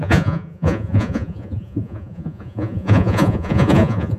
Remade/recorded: remade